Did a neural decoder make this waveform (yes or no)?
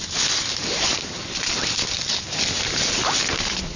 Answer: no